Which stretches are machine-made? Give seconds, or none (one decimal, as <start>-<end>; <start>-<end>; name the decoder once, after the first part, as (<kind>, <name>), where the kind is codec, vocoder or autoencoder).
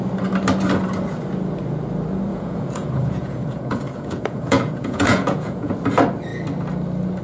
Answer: 2.3-5.7 (vocoder, Vocos)